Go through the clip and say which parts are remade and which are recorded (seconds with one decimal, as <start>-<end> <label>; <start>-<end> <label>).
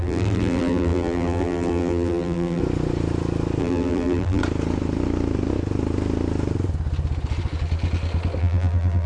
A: 0.0-2.6 remade; 2.6-3.6 recorded; 3.6-4.4 remade; 4.4-8.4 recorded; 8.4-9.1 remade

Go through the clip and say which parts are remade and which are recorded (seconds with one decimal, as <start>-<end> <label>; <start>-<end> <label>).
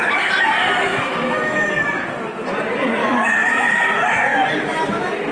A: 0.0-0.9 recorded; 0.9-1.7 remade; 1.7-3.0 recorded; 3.0-3.8 remade; 3.8-4.3 recorded; 4.3-5.3 remade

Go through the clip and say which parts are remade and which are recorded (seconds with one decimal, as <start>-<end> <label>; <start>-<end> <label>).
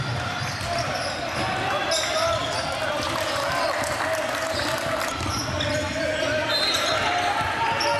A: 0.0-8.0 recorded